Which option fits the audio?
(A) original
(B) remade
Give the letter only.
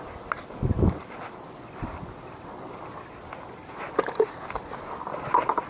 A